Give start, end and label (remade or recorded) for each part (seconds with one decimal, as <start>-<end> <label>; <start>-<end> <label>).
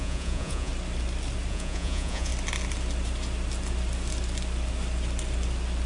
0.0-0.7 remade; 0.7-1.5 recorded; 1.5-2.3 remade; 2.3-5.9 recorded